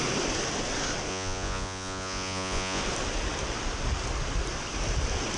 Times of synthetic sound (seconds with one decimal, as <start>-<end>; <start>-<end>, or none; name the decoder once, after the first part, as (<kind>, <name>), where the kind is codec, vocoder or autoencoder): 1.1-2.8 (vocoder, Vocos)